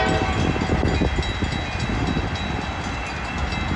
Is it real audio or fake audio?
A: real